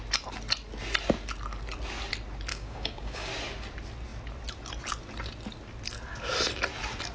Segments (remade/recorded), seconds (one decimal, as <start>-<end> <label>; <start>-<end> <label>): 0.0-2.5 recorded; 2.5-3.3 remade; 3.3-7.1 recorded